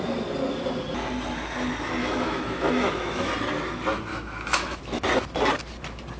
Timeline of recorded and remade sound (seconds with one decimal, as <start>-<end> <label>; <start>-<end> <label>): 0.0-2.0 recorded; 2.0-3.3 remade; 3.3-4.1 recorded; 4.1-4.8 remade; 4.8-6.2 recorded